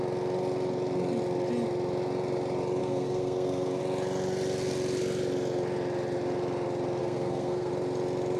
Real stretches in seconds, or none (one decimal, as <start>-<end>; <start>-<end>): 0.0-2.8; 3.8-7.0; 7.7-8.4